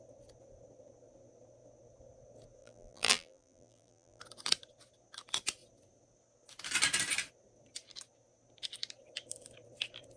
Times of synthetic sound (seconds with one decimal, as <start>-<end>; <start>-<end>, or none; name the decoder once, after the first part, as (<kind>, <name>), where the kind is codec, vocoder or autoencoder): 2.6-4.2 (vocoder, BigVGAN v2)